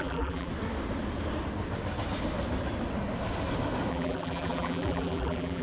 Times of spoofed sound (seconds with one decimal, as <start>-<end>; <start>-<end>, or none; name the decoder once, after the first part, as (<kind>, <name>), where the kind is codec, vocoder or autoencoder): 0.0-0.5 (vocoder, BigVGAN v2); 3.9-5.6